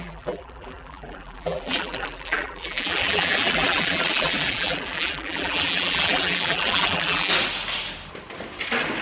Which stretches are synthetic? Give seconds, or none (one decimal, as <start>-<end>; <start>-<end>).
0.0-7.3